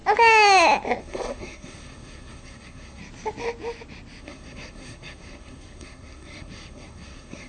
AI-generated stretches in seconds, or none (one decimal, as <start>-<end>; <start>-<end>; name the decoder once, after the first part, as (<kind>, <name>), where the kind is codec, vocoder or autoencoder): 1.0-3.0 (codec, SNAC); 4.2-7.5